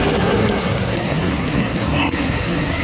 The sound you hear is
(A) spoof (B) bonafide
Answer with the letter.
A